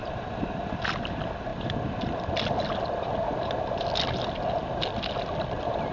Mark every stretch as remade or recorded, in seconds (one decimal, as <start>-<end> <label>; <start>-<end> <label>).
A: 0.0-5.9 recorded